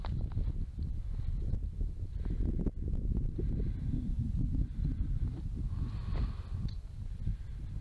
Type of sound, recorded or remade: recorded